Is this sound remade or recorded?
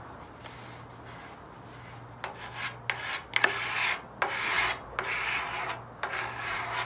recorded